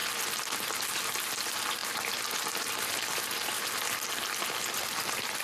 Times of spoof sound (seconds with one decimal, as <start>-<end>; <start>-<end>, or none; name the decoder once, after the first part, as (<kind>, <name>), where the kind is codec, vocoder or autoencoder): 0.0-1.0 (vocoder, BigVGAN v2); 1.8-4.1